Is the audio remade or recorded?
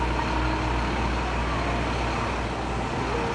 recorded